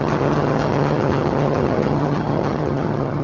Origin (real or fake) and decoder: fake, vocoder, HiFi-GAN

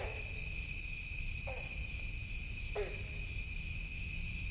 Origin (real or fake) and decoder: real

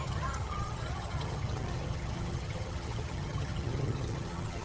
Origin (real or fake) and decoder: fake, vocoder, HiFi-GAN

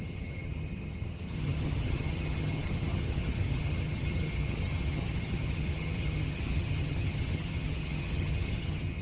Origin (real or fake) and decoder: fake, vocoder, HiFi-GAN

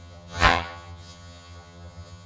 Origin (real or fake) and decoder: fake, vocoder, HiFi-GAN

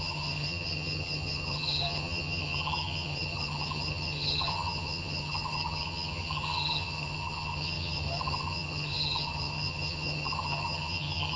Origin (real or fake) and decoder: fake, vocoder, HiFi-GAN